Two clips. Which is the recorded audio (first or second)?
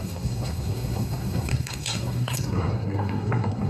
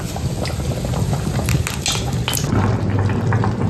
second